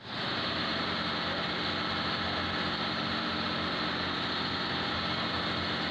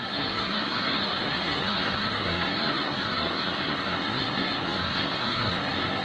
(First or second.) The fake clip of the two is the second